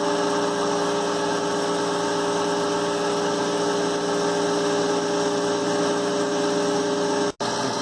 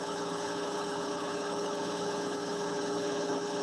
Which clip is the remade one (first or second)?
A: second